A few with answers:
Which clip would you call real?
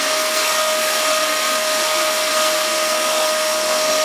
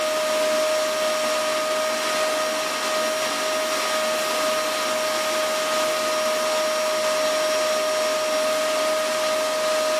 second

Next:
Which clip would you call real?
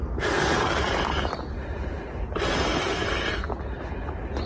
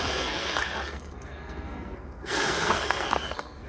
first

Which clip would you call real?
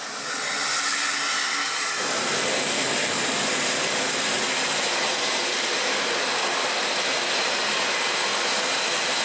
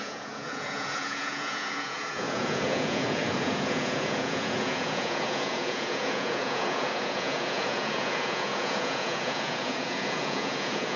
first